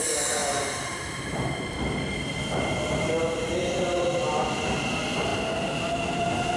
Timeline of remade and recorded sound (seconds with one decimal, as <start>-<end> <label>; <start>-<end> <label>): 0.0-6.6 recorded